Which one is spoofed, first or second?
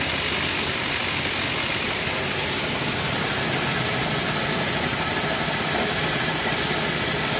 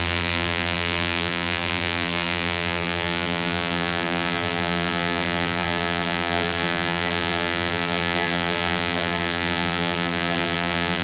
second